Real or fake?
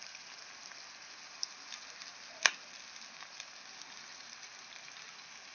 real